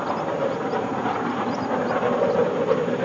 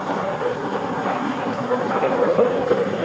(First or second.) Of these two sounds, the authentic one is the first